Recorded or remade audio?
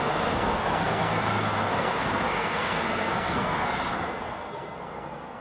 remade